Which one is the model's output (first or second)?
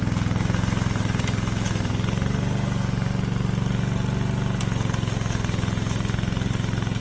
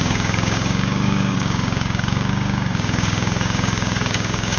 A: second